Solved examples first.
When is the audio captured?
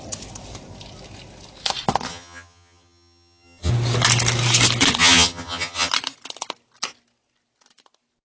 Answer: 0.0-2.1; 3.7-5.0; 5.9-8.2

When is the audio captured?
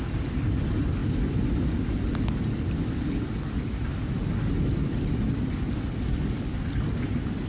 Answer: 0.0-7.5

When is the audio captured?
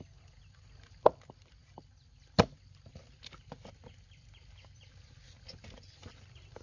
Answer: 0.0-6.6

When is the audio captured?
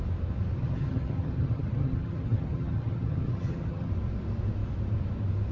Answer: 0.0-0.6; 3.9-5.5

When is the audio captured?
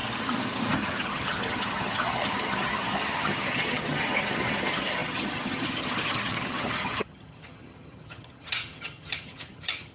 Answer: 0.0-0.7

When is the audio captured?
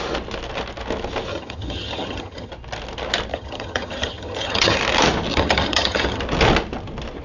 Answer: 0.0-1.3; 2.5-3.3; 4.8-5.3; 6.2-7.2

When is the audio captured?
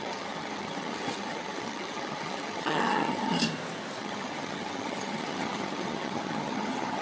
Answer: 3.4-4.0